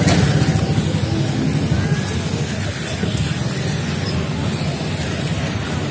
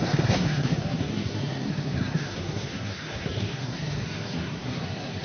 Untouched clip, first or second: first